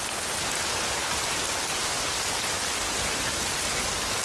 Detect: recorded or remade recorded